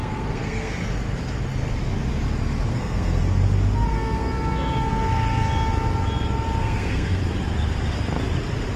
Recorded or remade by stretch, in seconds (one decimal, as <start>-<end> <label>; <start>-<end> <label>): 0.0-0.7 remade; 0.7-2.7 recorded; 2.7-3.2 remade; 3.2-3.9 recorded; 3.9-4.9 remade; 4.9-6.6 recorded; 6.6-7.2 remade; 7.2-8.8 recorded